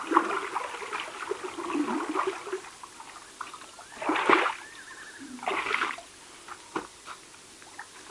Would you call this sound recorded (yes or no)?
yes